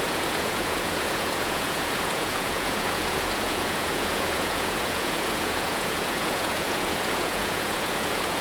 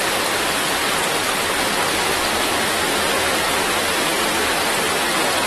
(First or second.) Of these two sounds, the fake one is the first